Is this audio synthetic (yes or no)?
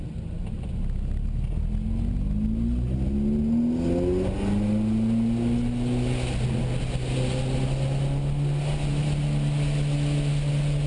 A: no